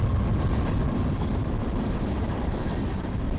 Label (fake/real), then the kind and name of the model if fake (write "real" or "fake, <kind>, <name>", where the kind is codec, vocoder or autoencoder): real